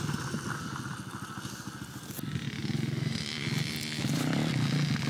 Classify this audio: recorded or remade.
recorded